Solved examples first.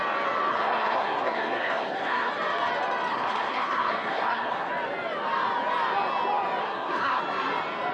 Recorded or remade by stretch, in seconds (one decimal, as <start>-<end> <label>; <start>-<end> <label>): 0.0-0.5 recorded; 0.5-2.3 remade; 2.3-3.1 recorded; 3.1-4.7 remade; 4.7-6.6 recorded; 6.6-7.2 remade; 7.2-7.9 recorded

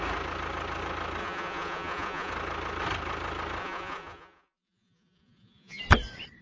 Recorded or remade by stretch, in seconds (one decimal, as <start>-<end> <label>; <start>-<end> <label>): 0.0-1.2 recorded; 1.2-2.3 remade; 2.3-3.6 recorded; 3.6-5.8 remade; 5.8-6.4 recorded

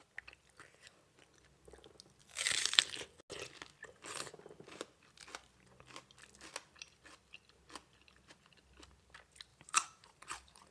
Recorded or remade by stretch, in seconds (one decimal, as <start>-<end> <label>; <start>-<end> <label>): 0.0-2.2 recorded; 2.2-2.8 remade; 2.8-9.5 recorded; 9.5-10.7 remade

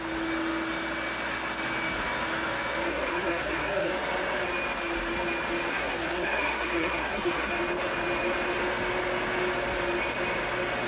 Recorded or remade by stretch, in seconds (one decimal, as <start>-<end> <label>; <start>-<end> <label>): 0.0-2.9 recorded; 2.9-3.9 remade; 3.9-5.7 recorded; 5.7-7.5 remade; 7.5-10.9 recorded